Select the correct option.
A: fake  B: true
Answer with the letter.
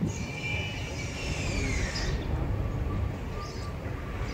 B